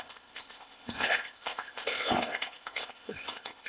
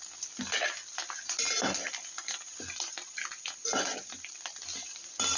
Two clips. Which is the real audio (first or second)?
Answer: second